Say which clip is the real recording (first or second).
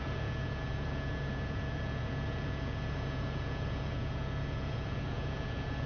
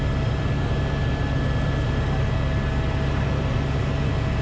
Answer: second